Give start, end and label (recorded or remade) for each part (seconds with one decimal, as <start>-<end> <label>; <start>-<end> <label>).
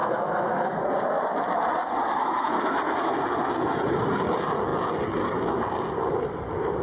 0.0-0.8 remade; 0.8-2.2 recorded; 2.2-2.8 remade; 2.8-6.8 recorded